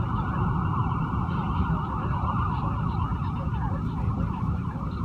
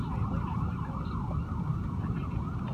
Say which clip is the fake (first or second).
first